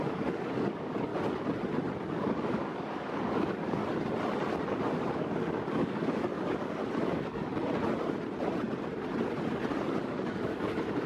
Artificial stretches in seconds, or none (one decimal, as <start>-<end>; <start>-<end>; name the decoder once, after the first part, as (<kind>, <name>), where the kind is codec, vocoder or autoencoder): 0.0-1.1 (codec, DAC); 2.1-3.8; 4.7-7.5; 10.0-11.1